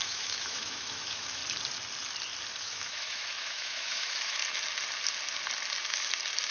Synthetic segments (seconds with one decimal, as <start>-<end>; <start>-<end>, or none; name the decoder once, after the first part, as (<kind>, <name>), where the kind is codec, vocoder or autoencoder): 0.0-1.4 (autoencoder, DAC-VAE); 2.6-4.4